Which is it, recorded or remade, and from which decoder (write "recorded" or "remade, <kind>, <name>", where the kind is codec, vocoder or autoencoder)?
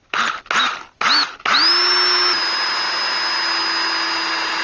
recorded